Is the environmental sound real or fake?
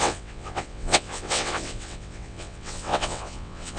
fake